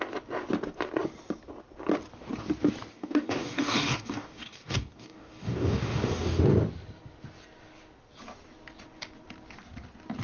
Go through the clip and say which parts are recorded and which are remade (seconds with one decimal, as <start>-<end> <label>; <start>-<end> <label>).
0.0-2.9 recorded; 2.9-6.4 remade; 6.4-10.2 recorded